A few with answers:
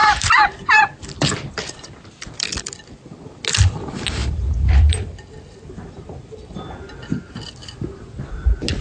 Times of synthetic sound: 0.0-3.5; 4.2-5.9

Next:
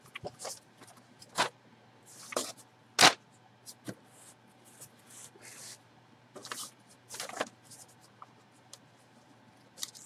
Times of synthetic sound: 0.0-2.4; 5.8-10.1